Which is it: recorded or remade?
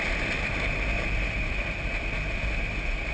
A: recorded